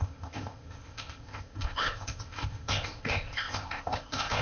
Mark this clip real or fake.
fake